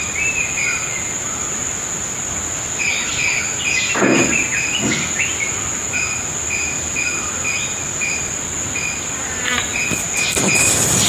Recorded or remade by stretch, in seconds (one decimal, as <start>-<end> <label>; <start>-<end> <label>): 0.0-11.1 recorded